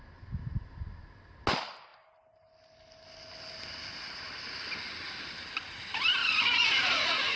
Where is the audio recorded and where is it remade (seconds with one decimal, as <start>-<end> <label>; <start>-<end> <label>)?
0.0-6.2 recorded; 6.2-7.4 remade